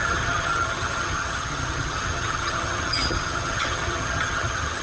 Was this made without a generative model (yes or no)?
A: no